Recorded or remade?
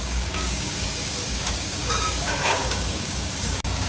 remade